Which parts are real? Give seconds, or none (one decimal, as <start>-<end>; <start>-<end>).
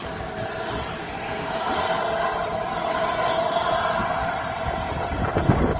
0.0-1.0; 1.7-5.8